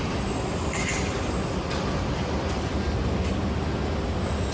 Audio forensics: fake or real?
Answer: real